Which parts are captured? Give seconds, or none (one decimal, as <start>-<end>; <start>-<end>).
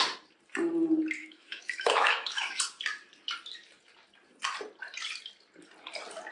0.0-1.2; 2.6-6.3